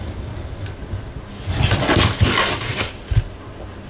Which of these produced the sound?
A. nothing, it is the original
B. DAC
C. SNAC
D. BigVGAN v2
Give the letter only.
A